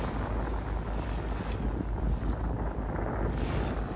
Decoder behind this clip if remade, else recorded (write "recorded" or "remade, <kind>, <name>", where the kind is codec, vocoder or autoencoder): recorded